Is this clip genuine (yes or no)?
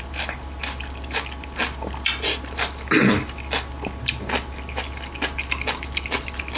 yes